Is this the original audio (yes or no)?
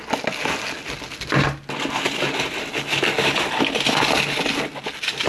yes